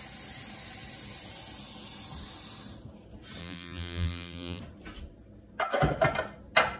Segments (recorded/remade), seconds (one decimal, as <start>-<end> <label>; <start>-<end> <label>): 0.0-3.4 recorded; 3.4-4.6 remade; 4.6-6.8 recorded